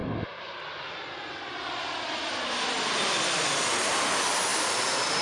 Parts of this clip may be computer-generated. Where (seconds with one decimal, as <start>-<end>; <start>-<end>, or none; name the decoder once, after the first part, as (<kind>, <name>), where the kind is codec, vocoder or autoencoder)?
none